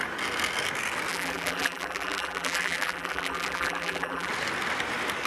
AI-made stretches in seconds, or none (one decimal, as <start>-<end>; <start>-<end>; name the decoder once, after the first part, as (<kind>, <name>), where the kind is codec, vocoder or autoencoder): 1.1-4.3 (vocoder, BigVGAN v2)